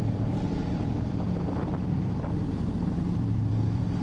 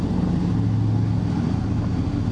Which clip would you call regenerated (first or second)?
first